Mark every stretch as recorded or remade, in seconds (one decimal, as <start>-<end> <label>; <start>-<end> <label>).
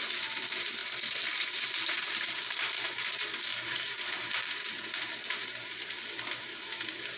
0.0-0.8 remade; 0.8-1.5 recorded; 1.5-7.2 remade